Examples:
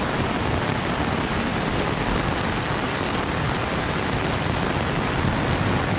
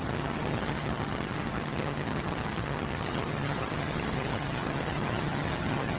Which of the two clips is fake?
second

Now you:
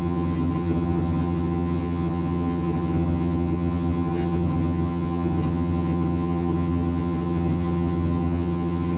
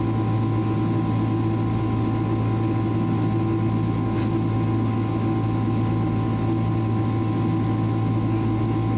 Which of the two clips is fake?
first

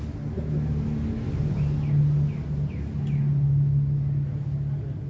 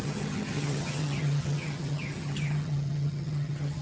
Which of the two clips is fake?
second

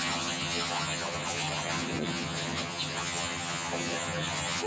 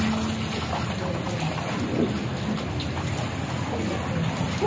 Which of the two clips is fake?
first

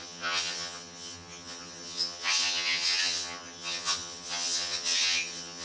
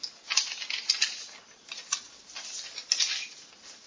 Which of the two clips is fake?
first